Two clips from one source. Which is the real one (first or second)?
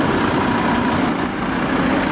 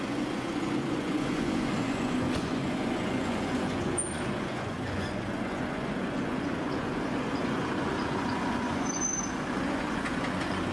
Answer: first